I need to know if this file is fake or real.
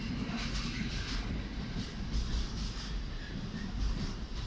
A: real